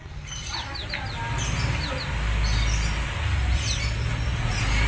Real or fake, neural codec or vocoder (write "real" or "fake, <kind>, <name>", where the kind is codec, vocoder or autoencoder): real